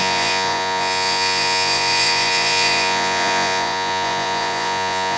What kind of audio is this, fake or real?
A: fake